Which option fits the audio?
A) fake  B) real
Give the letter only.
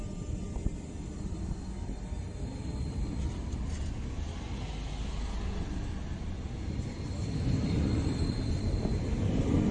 B